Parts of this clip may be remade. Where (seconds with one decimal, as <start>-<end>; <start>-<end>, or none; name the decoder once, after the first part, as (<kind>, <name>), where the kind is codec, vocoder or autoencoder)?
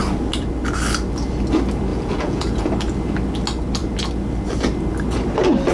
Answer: 1.9-2.7 (vocoder, Vocos)